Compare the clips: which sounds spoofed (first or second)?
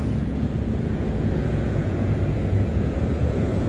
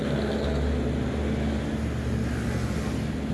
first